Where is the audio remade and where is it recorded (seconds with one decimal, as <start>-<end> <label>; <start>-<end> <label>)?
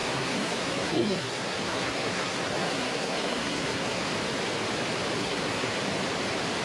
0.0-4.0 remade; 4.0-5.2 recorded; 5.2-5.7 remade; 5.7-6.6 recorded